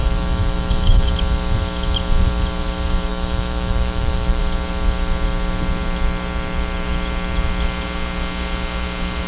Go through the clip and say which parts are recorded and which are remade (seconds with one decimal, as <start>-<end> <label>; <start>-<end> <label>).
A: 0.0-1.1 remade; 1.1-3.1 recorded; 3.1-4.4 remade; 4.4-9.3 recorded